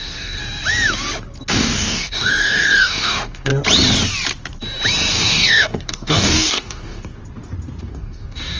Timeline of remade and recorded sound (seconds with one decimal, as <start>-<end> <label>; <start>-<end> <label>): 0.0-0.4 remade; 0.4-1.5 recorded; 1.5-3.5 remade; 3.5-5.1 recorded; 5.1-7.2 remade; 7.2-7.8 recorded; 7.8-8.6 remade